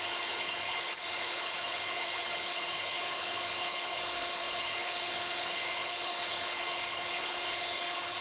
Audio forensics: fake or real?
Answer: fake